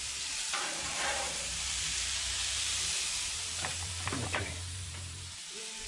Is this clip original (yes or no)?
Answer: no